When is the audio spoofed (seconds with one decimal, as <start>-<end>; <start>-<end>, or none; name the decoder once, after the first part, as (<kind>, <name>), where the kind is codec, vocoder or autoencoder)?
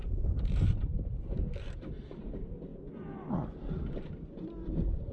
0.0-2.7 (vocoder, BigVGAN v2)